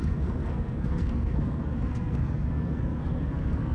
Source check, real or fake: fake